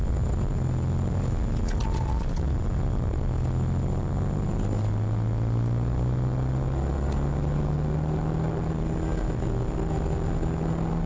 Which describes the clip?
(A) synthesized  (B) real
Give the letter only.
B